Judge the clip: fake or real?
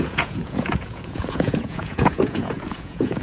fake